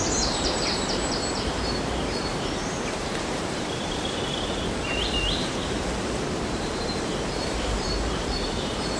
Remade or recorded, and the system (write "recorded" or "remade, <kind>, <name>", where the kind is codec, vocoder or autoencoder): remade, vocoder, BigVGAN v2